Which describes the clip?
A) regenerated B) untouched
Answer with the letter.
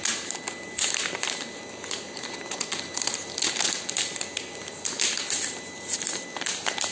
B